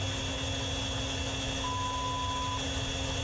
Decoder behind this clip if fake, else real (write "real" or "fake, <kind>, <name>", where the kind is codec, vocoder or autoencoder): real